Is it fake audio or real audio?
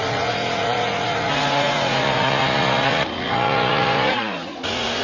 fake